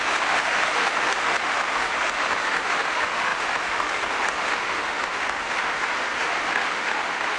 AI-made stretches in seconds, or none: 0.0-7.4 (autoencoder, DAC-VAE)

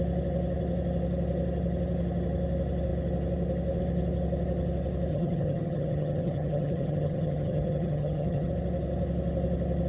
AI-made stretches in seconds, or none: 5.1-8.5 (vocoder, HiFi-GAN)

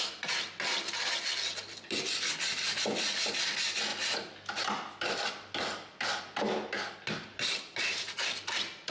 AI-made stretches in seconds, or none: none

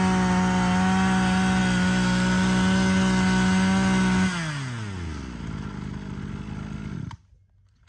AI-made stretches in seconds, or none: none